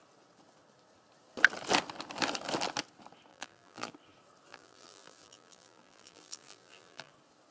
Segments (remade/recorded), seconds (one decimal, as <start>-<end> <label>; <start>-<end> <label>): 0.0-3.3 recorded; 3.3-3.9 remade; 3.9-4.5 recorded; 4.5-7.1 remade; 7.1-7.5 recorded